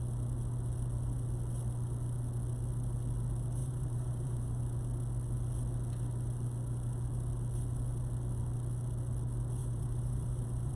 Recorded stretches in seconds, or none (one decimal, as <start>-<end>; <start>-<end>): 0.0-3.6; 4.6-9.6